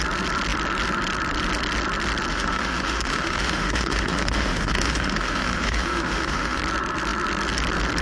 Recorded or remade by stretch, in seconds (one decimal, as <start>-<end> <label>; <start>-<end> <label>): 0.0-2.3 recorded; 2.3-6.6 remade; 6.6-8.0 recorded